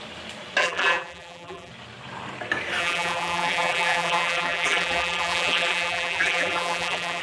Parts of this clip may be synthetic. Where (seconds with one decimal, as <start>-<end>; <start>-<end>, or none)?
0.6-1.7; 2.8-7.2